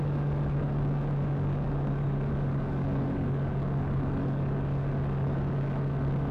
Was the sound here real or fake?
fake